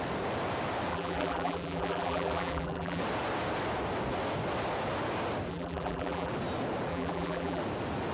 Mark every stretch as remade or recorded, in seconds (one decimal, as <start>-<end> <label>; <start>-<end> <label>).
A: 0.0-0.9 recorded; 0.9-3.0 remade; 3.0-5.5 recorded; 5.5-6.3 remade; 6.3-6.9 recorded; 6.9-7.6 remade; 7.6-8.1 recorded